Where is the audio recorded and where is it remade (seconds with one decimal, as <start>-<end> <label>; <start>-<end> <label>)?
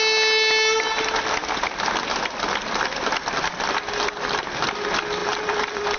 0.0-5.2 recorded; 5.2-6.0 remade